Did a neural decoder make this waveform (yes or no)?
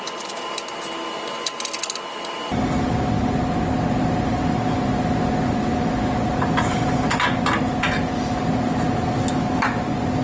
no